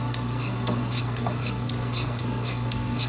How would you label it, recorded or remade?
remade